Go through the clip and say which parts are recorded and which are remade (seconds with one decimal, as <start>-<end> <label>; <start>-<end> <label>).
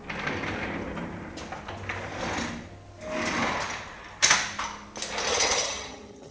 0.0-5.3 recorded; 5.3-6.3 remade